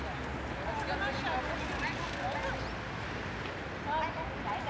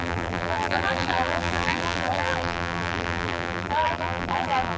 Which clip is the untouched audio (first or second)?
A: first